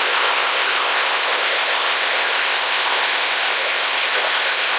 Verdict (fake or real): fake